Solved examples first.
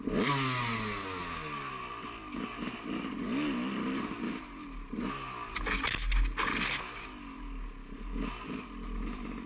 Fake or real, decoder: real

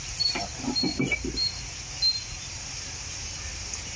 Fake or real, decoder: real